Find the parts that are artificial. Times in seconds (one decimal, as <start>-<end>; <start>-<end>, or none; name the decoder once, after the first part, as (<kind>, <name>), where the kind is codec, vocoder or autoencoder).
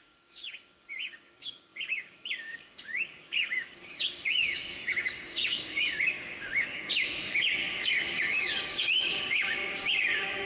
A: 0.0-10.5 (codec, DAC)